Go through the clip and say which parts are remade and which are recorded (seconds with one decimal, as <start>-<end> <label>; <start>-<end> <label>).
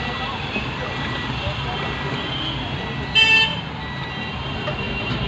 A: 0.0-5.3 recorded